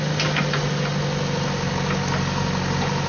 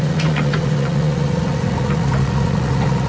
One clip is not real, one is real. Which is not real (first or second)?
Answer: second